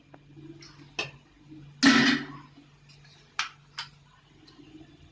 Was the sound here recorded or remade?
recorded